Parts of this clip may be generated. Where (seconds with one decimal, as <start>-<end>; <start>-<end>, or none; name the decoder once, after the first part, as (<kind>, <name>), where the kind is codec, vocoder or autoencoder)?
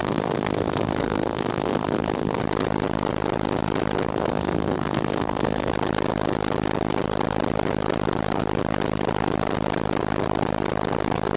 0.0-2.4 (codec, SNAC); 4.1-5.7